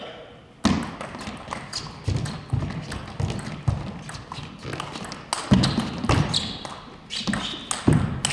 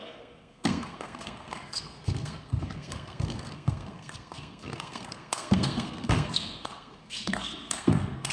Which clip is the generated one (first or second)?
second